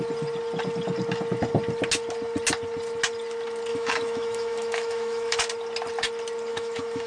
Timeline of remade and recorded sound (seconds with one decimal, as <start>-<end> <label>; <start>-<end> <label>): 0.0-3.7 recorded; 3.7-5.4 remade; 5.4-6.5 recorded; 6.5-7.1 remade